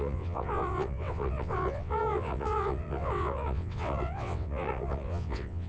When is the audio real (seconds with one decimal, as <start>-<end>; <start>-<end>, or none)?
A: none